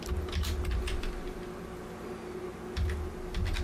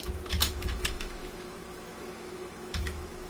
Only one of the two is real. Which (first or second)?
first